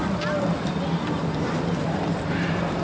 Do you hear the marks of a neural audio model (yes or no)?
yes